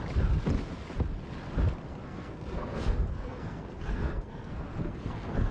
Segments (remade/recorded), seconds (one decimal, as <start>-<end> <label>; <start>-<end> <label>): 0.0-1.9 recorded; 1.9-5.5 remade